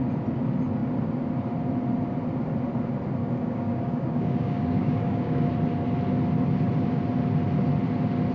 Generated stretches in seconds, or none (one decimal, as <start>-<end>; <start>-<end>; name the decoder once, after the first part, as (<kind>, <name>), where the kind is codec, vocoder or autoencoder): 3.2-5.5 (codec, DAC)